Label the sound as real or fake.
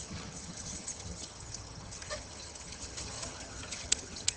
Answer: fake